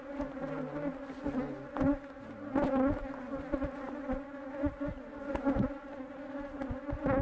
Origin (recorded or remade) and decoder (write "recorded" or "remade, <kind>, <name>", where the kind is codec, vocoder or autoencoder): recorded